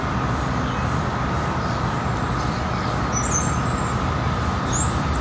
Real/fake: real